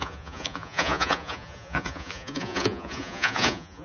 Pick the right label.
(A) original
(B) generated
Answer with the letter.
B